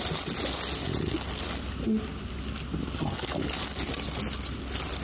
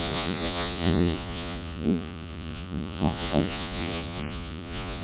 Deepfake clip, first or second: second